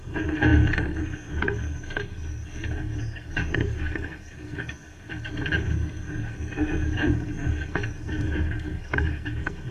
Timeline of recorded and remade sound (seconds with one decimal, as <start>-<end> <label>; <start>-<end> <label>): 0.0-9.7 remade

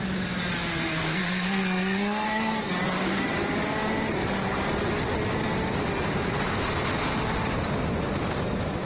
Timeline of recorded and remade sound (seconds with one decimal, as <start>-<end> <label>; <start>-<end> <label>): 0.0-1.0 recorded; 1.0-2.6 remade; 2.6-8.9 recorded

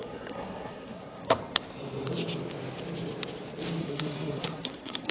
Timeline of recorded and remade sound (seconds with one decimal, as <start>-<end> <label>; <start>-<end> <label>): 0.0-1.4 remade; 1.4-3.8 recorded; 3.8-5.1 remade